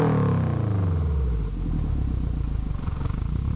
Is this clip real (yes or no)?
yes